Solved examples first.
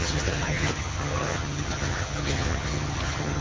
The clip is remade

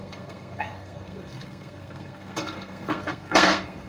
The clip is remade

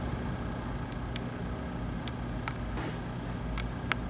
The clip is recorded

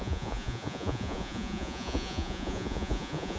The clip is remade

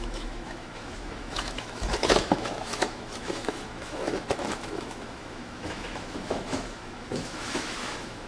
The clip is remade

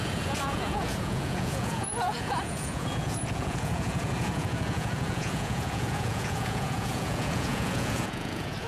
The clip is remade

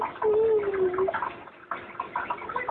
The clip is recorded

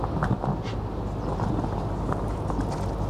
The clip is recorded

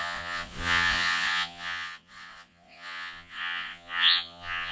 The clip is remade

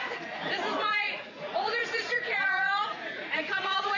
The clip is remade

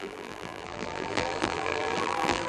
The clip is remade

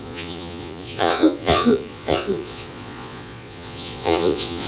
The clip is remade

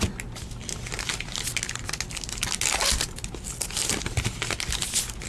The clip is recorded